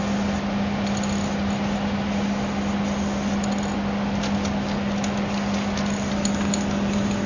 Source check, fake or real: real